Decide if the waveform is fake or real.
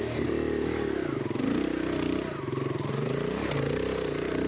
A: real